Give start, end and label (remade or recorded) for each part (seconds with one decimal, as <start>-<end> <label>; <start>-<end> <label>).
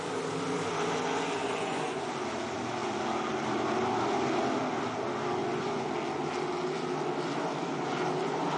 0.0-1.4 recorded; 1.4-2.1 remade; 2.1-5.4 recorded; 5.4-5.9 remade; 5.9-8.6 recorded